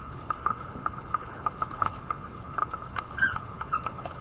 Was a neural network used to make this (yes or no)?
yes